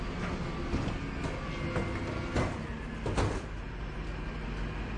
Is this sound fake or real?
real